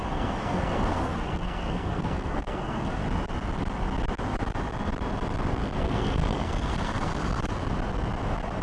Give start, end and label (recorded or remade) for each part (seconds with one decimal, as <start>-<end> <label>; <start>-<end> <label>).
0.0-3.0 remade; 3.0-5.8 recorded; 5.8-7.1 remade; 7.1-8.6 recorded